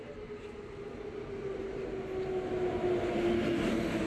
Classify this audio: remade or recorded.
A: recorded